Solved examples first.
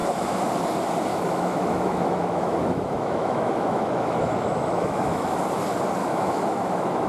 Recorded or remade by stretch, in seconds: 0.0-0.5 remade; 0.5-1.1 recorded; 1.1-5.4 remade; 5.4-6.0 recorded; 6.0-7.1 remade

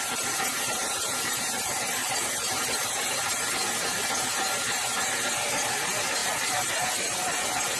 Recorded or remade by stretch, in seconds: 0.0-6.2 remade; 6.2-7.8 recorded

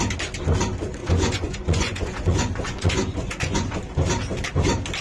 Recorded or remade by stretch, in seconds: 0.0-1.0 recorded; 1.0-3.8 remade; 3.8-5.0 recorded